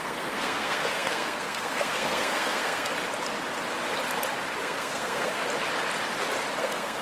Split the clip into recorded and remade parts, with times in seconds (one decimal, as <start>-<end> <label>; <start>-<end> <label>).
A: 0.0-2.9 remade; 2.9-4.6 recorded; 4.6-5.4 remade; 5.4-6.6 recorded; 6.6-7.0 remade